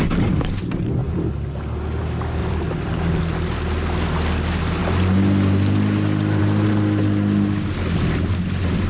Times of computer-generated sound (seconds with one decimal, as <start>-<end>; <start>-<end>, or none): 2.4-3.2